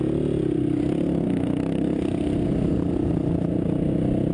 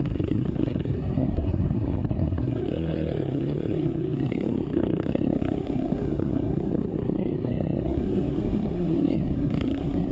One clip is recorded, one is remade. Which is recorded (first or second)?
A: first